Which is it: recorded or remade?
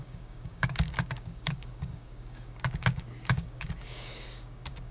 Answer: remade